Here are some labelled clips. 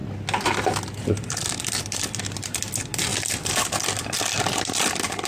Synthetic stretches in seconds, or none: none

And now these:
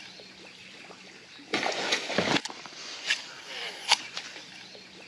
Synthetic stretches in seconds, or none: 1.5-2.1 (vocoder, Vocos); 2.8-4.3

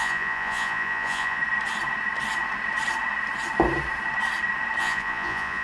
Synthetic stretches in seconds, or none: 0.0-1.4 (vocoder, Vocos); 4.8-5.6

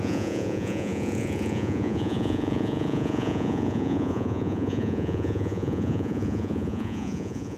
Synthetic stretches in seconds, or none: 0.0-7.6 (vocoder, Vocos)

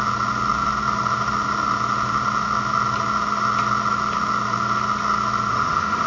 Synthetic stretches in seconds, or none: 5.5-6.1 (autoencoder, DAC-VAE)

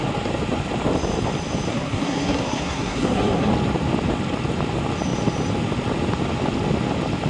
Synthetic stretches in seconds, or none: 1.7-3.5 (codec, SNAC)